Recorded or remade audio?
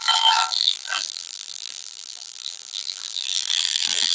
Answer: remade